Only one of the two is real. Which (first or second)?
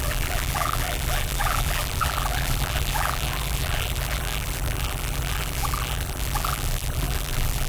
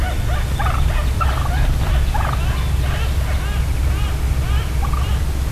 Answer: second